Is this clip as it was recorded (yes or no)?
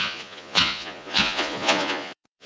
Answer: no